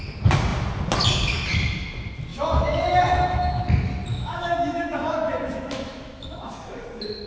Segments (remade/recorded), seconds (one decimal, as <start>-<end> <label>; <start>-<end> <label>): 0.0-2.3 recorded; 2.3-3.6 remade; 3.6-4.1 recorded; 4.1-6.5 remade; 6.5-7.3 recorded